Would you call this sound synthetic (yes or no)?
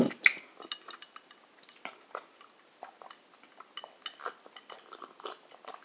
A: no